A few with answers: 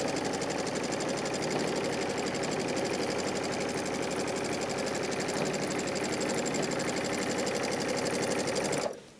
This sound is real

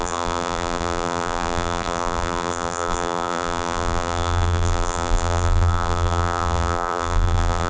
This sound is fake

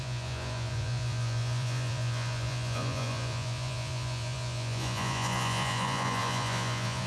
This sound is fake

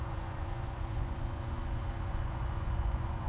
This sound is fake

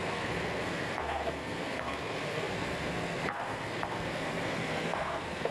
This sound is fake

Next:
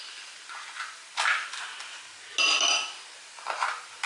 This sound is real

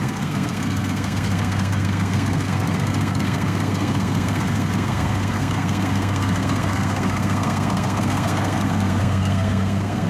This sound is fake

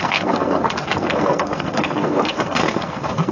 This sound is fake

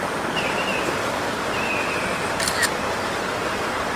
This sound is fake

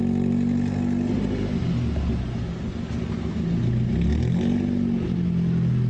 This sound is real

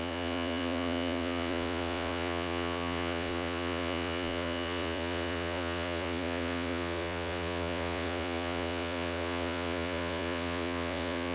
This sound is fake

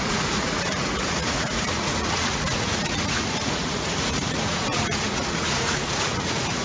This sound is fake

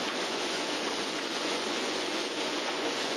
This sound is fake